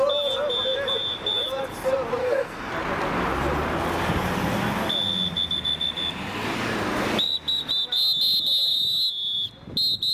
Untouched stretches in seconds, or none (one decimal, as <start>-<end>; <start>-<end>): 0.0-2.2; 2.7-10.1